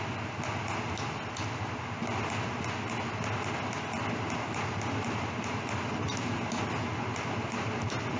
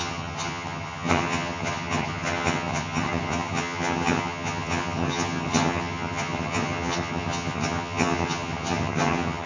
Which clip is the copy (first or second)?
second